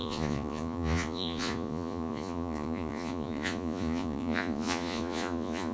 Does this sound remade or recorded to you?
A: remade